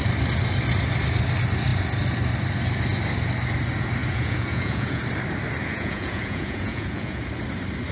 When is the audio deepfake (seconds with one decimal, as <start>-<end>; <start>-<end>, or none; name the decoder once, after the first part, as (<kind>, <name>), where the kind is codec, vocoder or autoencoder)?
4.0-5.0 (vocoder, Vocos); 5.6-7.3